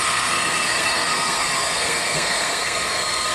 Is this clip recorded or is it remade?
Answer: remade